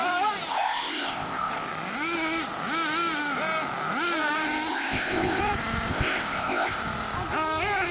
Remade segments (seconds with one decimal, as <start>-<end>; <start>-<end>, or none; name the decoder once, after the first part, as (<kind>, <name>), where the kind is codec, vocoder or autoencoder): 0.5-1.5 (codec, ZipCodec); 4.7-5.4; 5.9-6.8